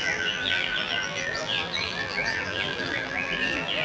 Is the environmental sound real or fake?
fake